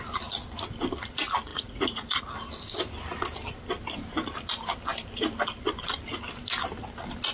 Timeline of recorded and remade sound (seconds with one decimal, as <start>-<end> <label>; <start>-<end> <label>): 0.0-1.5 recorded; 1.5-2.2 remade; 2.2-7.3 recorded